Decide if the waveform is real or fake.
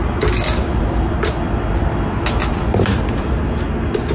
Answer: real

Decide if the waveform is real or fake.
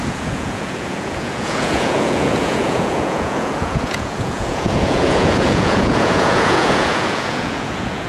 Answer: fake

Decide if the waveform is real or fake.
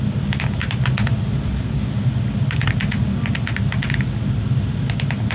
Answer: real